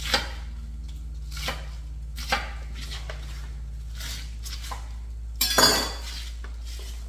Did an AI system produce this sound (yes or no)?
no